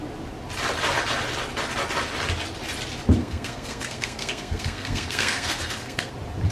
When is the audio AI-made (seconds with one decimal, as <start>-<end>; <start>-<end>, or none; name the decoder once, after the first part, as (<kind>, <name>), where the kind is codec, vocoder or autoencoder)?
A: 3.2-6.1 (codec, SNAC)